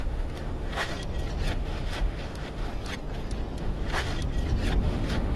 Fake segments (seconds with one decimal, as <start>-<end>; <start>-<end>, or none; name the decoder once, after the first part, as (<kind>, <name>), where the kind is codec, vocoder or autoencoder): 0.0-0.9 (autoencoder, DAC-VAE); 1.5-2.7; 3.6-4.1; 4.8-5.4